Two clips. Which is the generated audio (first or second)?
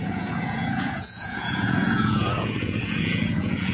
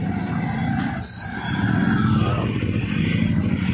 first